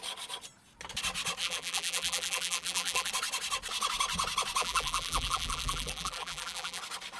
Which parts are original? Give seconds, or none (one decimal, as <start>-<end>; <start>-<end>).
0.0-1.4; 3.1-4.6; 6.8-7.2

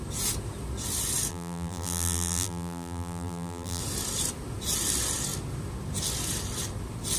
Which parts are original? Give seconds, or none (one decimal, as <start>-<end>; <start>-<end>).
0.0-1.3; 3.8-7.2

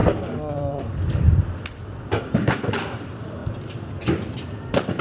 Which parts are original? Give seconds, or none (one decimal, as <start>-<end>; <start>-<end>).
3.4-3.9

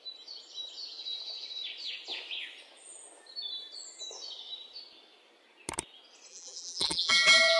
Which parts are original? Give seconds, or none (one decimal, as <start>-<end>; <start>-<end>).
0.0-6.3

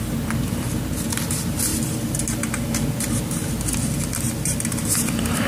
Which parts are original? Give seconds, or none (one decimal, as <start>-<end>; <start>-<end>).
0.0-5.5

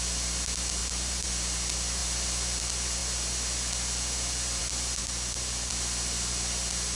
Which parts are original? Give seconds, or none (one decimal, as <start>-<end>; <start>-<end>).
0.0-0.8; 1.3-5.0; 5.7-7.0

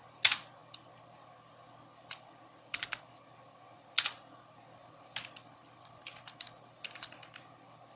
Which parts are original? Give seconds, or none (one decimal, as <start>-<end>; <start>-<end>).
0.0-8.0

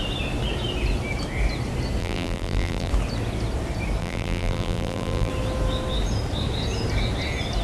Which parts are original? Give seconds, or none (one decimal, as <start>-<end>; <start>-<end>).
0.0-2.0; 2.9-4.0; 5.3-7.6